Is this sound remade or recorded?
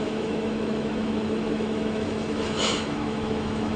remade